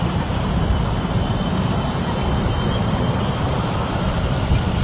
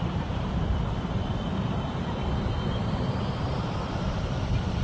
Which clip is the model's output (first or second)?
second